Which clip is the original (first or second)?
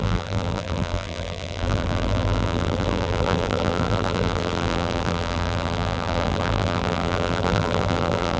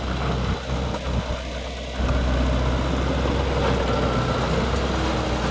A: second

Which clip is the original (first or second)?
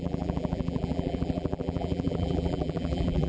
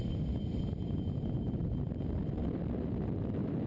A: second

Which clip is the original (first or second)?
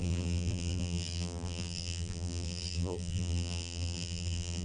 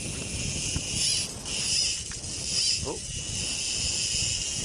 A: second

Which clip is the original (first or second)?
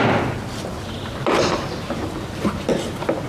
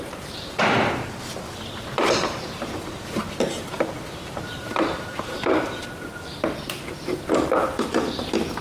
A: first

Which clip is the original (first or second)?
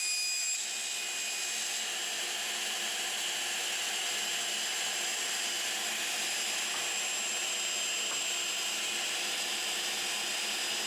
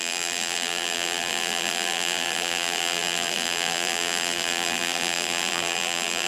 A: first